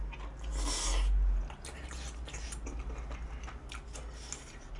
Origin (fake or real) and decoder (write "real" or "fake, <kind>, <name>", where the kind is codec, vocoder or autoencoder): real